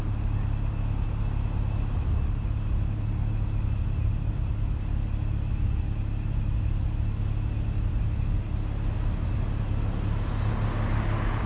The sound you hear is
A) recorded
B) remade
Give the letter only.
A